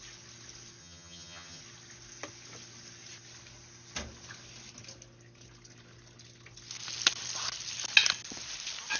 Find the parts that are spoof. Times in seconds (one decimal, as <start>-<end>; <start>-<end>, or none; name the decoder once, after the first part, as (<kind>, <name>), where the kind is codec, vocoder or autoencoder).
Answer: 0.8-1.6 (vocoder, HiFi-GAN)